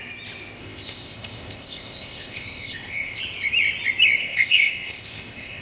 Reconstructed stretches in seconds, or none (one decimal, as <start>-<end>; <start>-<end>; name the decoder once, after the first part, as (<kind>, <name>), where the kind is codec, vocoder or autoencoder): 0.6-3.2 (codec, ZipCodec); 4.2-5.6